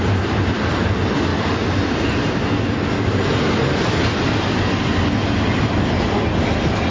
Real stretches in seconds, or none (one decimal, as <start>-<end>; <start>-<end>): 0.0-6.9